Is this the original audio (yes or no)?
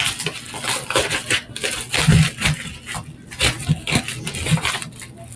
yes